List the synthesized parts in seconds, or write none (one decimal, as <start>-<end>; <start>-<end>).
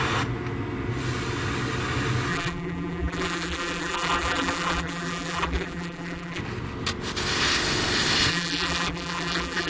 2.3-6.4; 8.3-9.7